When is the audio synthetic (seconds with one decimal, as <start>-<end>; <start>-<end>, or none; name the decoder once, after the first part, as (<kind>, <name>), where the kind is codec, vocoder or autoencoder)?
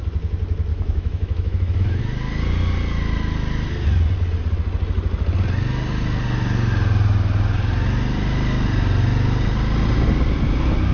0.7-2.0 (autoencoder, DAC-VAE)